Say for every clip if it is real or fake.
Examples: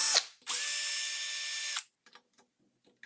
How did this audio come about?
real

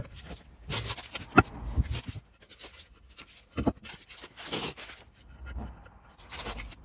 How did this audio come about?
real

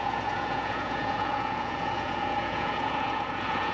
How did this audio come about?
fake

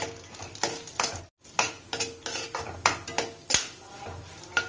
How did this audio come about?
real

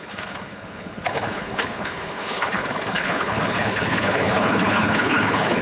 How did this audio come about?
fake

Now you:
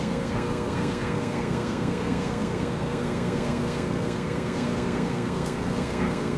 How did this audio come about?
fake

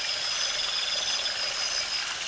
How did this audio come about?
real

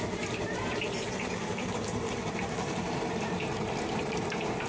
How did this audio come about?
fake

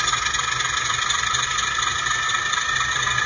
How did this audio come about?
real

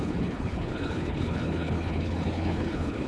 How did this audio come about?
fake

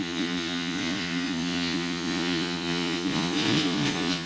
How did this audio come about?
fake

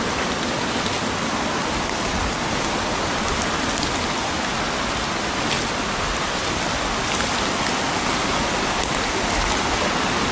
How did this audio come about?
real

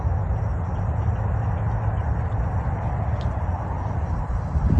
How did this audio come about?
real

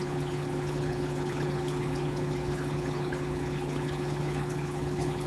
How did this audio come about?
fake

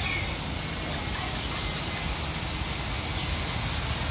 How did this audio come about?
real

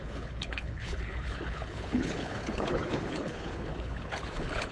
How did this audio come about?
fake